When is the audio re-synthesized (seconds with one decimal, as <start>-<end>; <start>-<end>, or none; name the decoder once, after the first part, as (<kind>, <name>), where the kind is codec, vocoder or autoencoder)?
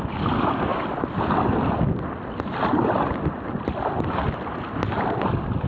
none